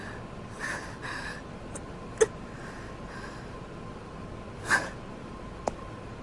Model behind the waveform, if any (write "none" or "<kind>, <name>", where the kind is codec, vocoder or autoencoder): none